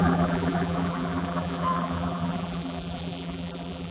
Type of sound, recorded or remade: remade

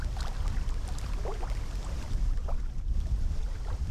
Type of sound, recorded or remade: recorded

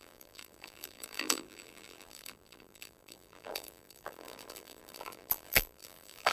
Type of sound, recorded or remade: remade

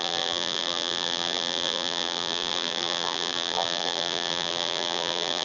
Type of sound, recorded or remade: remade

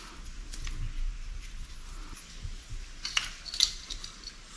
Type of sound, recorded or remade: recorded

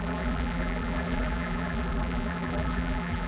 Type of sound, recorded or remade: remade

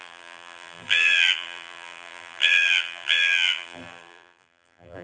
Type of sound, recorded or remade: remade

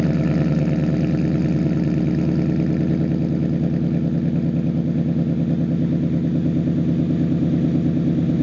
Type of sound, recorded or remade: recorded